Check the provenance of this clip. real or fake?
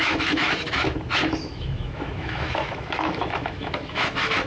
fake